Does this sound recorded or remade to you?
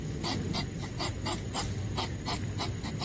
recorded